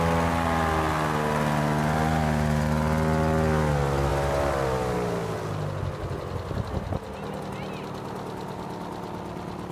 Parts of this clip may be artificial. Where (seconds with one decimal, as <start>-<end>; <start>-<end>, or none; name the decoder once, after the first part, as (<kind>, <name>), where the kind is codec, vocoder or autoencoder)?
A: none